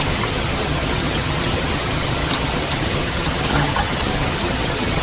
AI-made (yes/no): yes